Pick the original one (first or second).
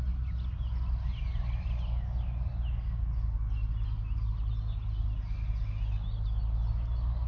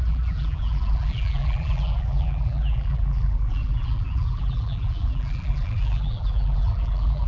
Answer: first